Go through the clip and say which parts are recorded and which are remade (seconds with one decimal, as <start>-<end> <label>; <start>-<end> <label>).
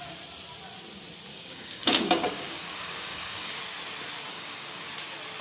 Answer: 0.0-1.3 recorded; 1.3-3.6 remade; 3.6-4.3 recorded; 4.3-4.9 remade; 4.9-5.4 recorded